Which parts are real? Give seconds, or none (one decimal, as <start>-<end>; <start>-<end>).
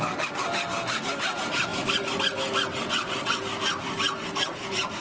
0.0-2.7; 3.4-5.0